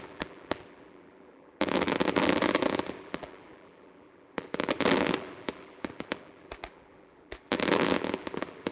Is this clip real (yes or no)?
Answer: no